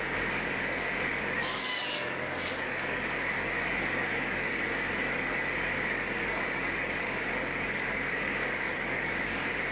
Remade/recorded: remade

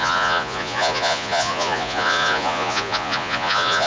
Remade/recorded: remade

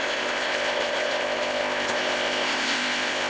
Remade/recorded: remade